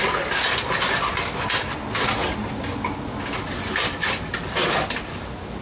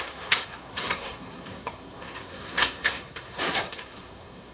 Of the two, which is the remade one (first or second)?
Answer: second